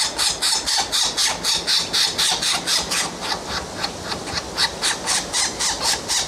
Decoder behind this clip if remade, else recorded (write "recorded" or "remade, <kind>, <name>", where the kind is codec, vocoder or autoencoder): recorded